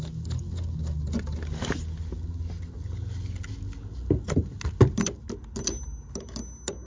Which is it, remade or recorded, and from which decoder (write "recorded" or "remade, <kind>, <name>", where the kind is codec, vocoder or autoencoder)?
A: recorded